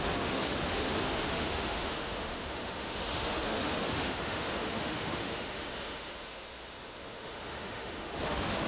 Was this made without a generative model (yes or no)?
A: no